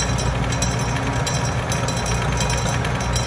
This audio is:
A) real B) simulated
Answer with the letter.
A